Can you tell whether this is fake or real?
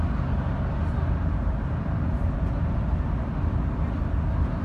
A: real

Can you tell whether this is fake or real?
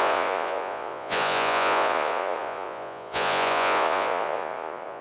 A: fake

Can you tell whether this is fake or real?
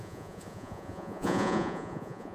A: fake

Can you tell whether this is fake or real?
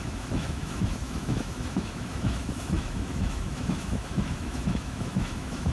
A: fake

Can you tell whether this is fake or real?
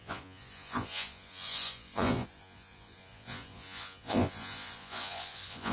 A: fake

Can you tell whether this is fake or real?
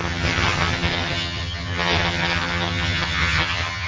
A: fake